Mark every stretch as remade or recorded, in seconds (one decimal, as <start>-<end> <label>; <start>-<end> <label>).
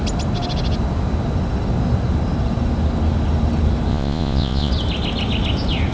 0.0-3.9 recorded; 3.9-4.7 remade; 4.7-5.9 recorded